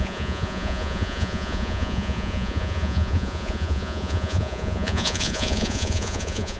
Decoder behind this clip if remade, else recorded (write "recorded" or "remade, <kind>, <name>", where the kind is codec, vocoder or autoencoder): remade, vocoder, Vocos